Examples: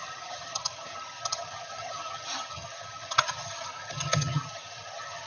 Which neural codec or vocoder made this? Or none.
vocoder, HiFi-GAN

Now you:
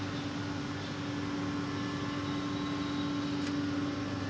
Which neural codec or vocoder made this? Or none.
none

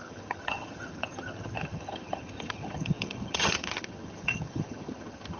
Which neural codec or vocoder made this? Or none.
vocoder, HiFi-GAN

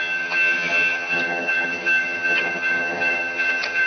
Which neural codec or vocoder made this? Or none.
vocoder, HiFi-GAN